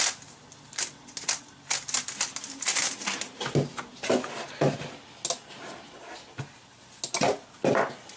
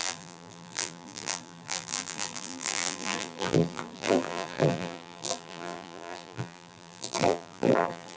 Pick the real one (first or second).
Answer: first